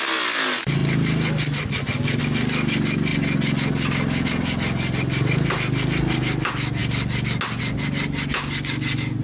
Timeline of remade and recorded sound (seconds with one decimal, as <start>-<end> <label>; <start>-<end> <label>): 0.0-9.2 recorded